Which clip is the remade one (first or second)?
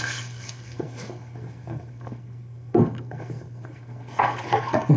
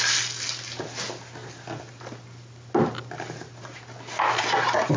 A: first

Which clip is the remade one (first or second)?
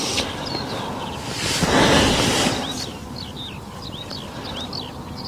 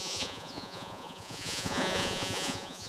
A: second